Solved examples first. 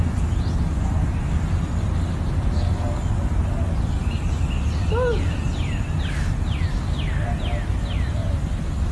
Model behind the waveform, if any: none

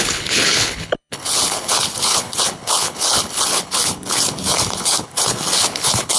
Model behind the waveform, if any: codec, HILCodec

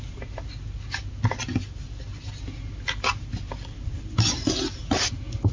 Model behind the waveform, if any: none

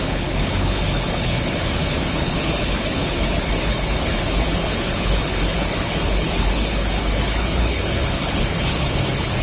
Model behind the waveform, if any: codec, HILCodec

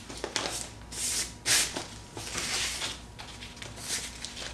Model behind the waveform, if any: none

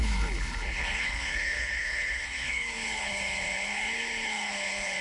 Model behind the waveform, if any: codec, HILCodec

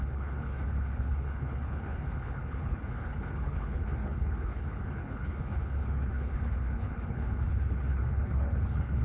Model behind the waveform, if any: codec, HILCodec